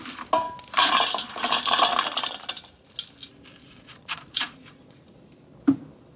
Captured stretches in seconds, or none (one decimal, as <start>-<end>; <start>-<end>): 0.0-3.6; 5.2-6.2